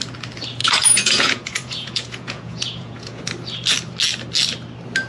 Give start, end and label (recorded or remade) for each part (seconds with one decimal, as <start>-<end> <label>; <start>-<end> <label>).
0.0-0.6 recorded; 0.6-3.2 remade; 3.2-5.1 recorded